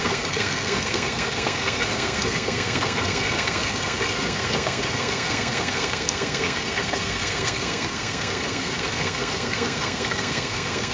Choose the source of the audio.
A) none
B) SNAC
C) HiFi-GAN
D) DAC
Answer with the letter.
B